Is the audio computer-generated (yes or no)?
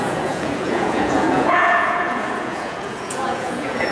yes